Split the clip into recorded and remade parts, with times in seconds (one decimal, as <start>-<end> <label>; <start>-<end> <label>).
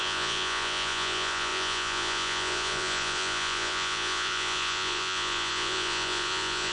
0.0-6.7 remade